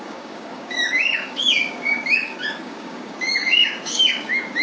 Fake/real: fake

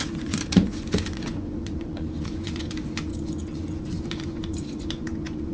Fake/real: fake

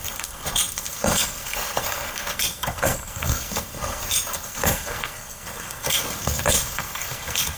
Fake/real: fake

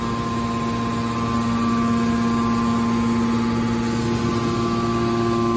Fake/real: real